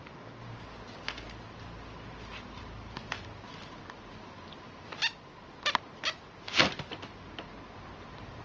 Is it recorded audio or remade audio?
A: recorded